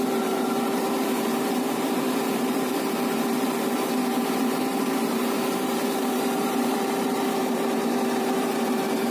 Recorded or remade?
remade